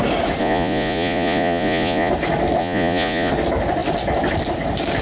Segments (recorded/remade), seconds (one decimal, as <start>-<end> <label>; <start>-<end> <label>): 0.0-0.4 recorded; 0.4-2.1 remade; 2.1-2.6 recorded; 2.6-3.3 remade; 3.3-5.0 recorded